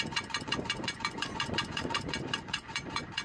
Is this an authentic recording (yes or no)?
no